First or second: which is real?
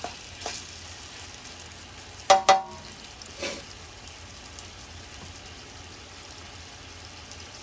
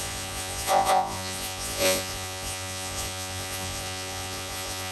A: first